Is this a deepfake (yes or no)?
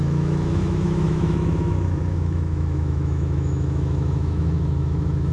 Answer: yes